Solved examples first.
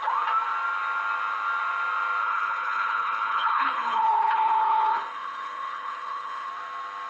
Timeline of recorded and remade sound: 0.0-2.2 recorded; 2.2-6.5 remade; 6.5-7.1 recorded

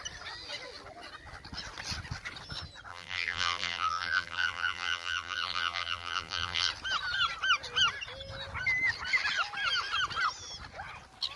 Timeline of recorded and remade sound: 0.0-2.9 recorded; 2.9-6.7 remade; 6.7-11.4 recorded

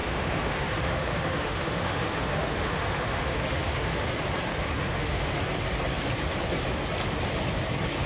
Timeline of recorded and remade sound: 0.0-4.1 remade; 4.1-4.5 recorded; 4.5-5.4 remade; 5.4-8.1 recorded

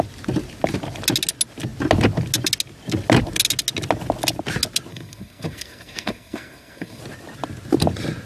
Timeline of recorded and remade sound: 0.0-4.9 recorded; 4.9-7.0 remade; 7.0-8.3 recorded

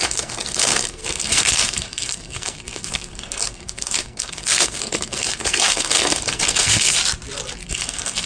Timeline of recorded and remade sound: 0.0-7.0 remade; 7.0-7.7 recorded; 7.7-8.3 remade